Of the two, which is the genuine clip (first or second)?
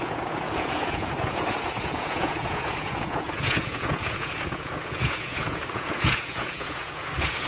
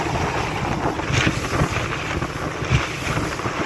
second